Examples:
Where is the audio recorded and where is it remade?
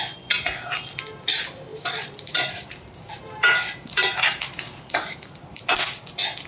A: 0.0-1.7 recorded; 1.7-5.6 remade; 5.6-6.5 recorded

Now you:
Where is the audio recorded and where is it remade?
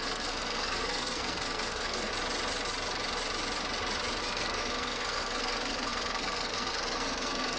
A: 0.0-2.1 remade; 2.1-4.2 recorded; 4.2-7.6 remade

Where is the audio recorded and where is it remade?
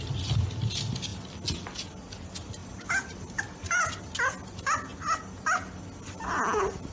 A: 0.0-2.6 recorded; 2.6-4.0 remade; 4.0-6.9 recorded